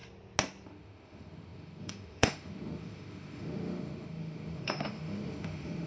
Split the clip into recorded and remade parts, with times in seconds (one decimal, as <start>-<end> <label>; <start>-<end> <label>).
0.0-0.7 recorded; 0.7-5.9 remade